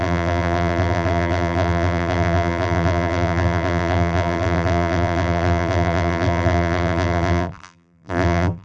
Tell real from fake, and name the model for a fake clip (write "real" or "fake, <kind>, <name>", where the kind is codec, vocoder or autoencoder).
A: fake, vocoder, BigVGAN v2